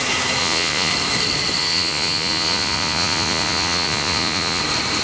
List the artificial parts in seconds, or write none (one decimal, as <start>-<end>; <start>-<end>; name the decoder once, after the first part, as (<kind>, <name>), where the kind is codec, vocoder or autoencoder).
0.4-0.9 (vocoder, Vocos); 1.6-4.6